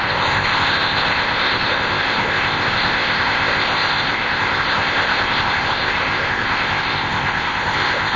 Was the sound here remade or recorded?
remade